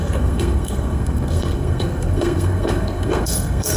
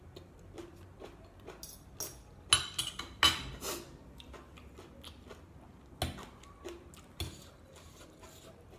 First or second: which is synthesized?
first